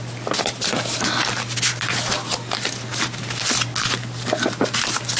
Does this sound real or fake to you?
real